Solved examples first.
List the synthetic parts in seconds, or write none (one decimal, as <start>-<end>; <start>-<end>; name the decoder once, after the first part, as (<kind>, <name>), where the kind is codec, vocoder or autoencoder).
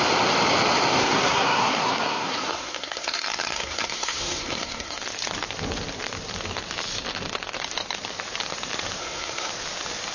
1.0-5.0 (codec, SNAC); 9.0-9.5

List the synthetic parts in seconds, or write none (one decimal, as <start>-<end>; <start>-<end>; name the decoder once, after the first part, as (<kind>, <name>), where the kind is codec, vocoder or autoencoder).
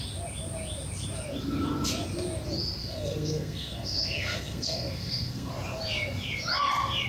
2.8-5.5 (codec, SNAC)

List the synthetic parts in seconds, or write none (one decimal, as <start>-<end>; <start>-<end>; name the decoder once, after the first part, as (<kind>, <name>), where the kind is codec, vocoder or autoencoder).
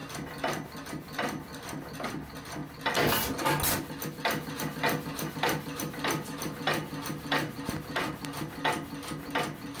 none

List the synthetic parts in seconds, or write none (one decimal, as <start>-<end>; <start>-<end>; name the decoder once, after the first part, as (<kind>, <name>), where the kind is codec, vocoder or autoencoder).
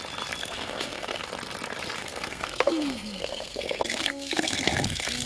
0.4-1.2 (codec, SNAC); 2.0-5.3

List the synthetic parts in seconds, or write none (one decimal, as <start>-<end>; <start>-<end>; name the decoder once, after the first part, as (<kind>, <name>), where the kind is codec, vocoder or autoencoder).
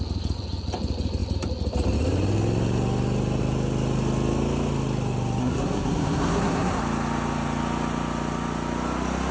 5.4-6.8 (codec, SNAC)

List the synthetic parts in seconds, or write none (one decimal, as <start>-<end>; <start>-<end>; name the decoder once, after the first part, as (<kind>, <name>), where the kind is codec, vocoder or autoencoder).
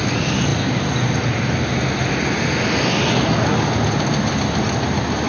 none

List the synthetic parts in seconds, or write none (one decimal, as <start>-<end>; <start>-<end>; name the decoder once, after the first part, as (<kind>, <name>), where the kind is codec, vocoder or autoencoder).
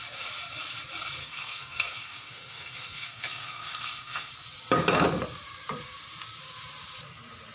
1.2-4.3 (codec, SNAC)